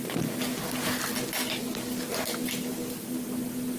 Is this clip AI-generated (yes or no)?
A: no